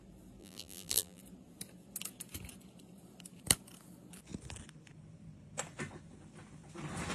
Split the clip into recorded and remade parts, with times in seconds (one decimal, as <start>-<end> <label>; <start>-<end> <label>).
0.0-0.4 recorded; 0.4-1.2 remade; 1.2-7.1 recorded